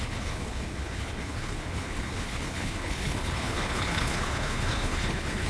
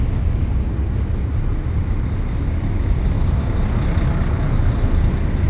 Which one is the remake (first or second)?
first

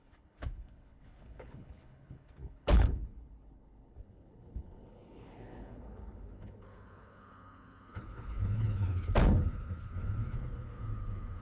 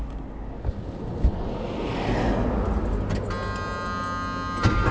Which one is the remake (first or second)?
first